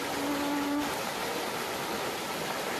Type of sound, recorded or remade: recorded